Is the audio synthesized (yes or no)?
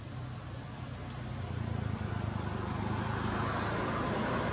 no